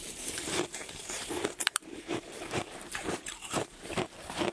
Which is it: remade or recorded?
remade